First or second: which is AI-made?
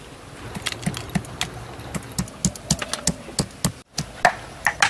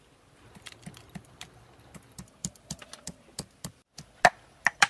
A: second